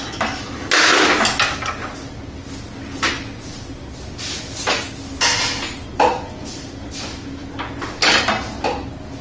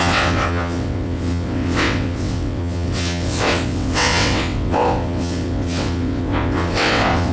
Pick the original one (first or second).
first